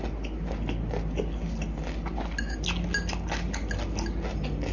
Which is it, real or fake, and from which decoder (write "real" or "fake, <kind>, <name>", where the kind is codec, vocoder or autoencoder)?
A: real